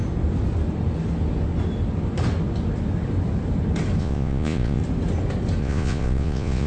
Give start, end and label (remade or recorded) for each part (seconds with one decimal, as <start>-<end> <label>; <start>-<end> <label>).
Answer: 0.0-4.0 recorded; 4.0-4.8 remade; 4.8-5.6 recorded; 5.6-6.7 remade